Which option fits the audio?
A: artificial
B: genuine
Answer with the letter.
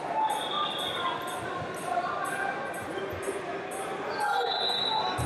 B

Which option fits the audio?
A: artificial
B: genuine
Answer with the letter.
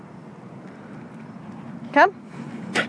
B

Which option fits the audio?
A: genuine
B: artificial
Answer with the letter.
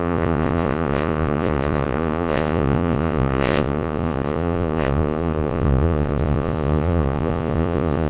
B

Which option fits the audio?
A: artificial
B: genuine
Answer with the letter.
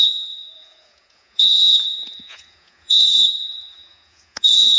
A